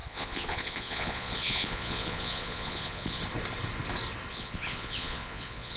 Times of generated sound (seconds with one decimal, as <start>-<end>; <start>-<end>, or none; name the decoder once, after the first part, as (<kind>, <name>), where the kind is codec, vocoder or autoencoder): 0.0-3.2 (vocoder, Vocos); 4.3-5.8